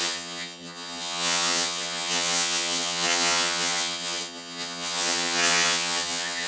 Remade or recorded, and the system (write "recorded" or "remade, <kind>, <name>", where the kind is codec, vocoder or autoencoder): remade, vocoder, HiFi-GAN